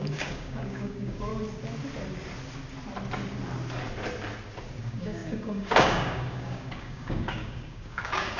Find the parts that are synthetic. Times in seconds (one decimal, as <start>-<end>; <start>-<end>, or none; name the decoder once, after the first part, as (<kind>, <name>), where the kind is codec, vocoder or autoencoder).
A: 0.0-1.3 (codec, DAC); 4.8-8.4